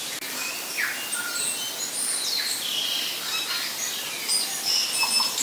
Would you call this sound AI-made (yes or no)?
no